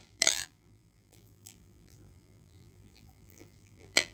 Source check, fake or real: fake